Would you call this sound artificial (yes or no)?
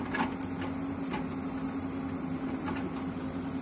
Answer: no